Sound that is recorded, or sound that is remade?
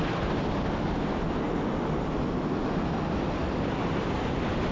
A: recorded